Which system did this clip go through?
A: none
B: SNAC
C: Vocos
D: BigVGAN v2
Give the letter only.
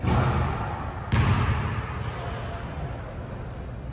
A